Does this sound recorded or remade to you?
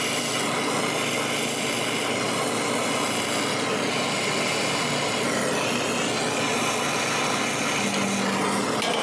recorded